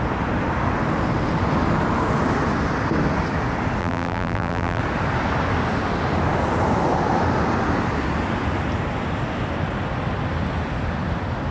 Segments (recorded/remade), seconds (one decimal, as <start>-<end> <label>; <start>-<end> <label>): 0.0-3.8 recorded; 3.8-4.8 remade; 4.8-11.5 recorded